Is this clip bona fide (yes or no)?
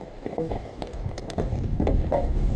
no